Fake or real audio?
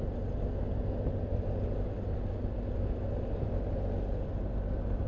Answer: real